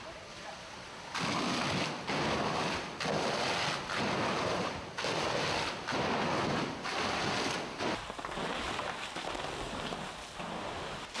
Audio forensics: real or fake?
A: real